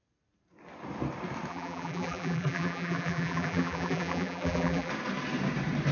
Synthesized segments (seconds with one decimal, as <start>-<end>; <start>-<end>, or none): 1.5-4.9